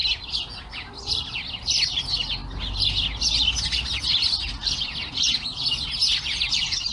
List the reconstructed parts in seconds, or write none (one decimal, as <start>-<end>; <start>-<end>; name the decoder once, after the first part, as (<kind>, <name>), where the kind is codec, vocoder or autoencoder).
1.1-2.4 (vocoder, BigVGAN v2); 6.5-6.9